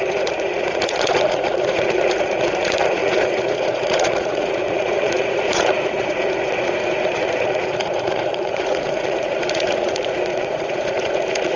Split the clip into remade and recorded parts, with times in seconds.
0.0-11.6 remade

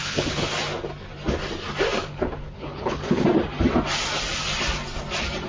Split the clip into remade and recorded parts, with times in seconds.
0.0-0.5 remade; 0.5-2.0 recorded; 2.0-3.2 remade; 3.2-5.5 recorded

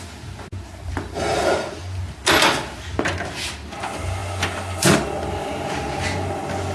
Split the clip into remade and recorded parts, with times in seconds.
0.0-0.7 recorded; 0.7-1.8 remade; 1.8-6.7 recorded

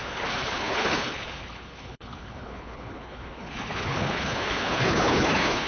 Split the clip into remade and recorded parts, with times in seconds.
0.0-5.7 remade

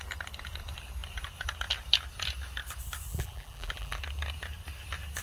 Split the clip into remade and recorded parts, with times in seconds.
0.0-3.1 recorded; 3.1-4.0 remade; 4.0-5.2 recorded

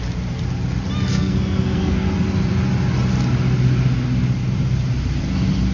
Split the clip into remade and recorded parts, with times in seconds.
0.0-1.1 recorded; 1.1-2.1 remade; 2.1-5.7 recorded

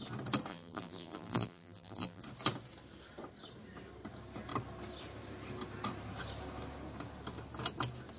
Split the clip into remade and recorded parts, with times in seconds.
0.0-0.5 recorded; 0.5-2.2 remade; 2.2-8.2 recorded

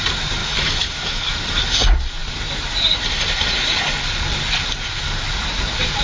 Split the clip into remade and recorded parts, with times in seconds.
0.0-0.4 recorded; 0.4-1.3 remade; 1.3-6.0 recorded